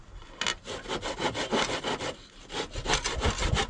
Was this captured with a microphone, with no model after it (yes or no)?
yes